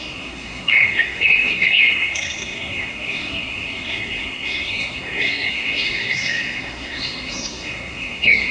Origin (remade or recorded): remade